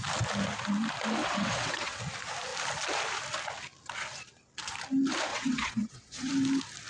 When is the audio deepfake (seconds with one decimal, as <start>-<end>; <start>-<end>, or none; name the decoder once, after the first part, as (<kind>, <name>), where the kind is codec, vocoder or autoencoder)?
1.2-2.0 (vocoder, WaveNeXt); 5.3-6.3